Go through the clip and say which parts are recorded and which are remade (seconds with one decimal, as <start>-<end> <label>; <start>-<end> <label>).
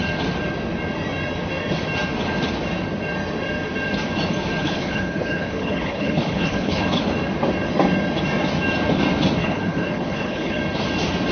0.0-4.6 recorded; 4.6-7.0 remade; 7.0-9.4 recorded; 9.4-10.6 remade; 10.6-11.3 recorded